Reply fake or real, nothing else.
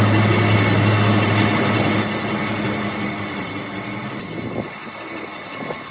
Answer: real